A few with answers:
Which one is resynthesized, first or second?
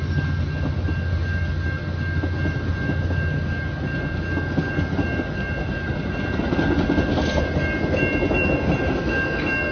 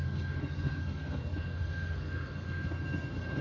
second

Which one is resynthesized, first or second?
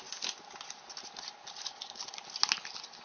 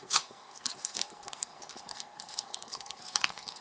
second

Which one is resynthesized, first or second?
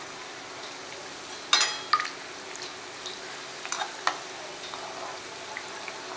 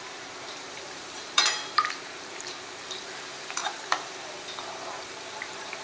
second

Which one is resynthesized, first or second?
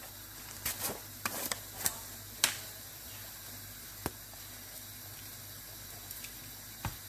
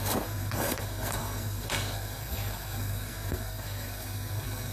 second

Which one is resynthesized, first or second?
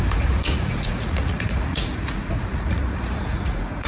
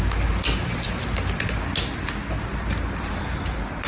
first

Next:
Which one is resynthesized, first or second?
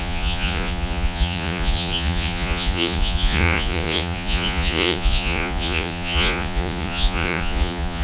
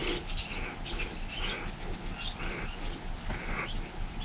first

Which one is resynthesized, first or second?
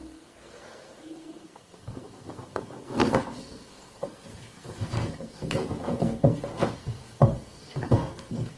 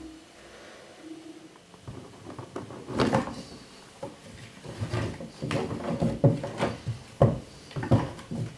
first